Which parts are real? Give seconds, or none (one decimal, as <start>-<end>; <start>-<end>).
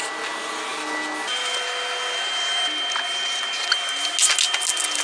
0.0-5.0